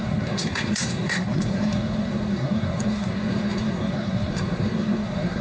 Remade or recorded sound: remade